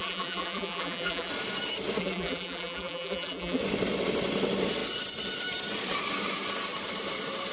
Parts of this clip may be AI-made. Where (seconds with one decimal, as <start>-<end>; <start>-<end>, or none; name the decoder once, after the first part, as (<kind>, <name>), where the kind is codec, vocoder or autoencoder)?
0.0-1.3 (vocoder, BigVGAN v2); 2.0-3.6